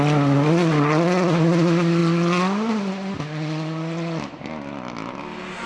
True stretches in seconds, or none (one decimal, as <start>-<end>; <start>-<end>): 0.0-5.7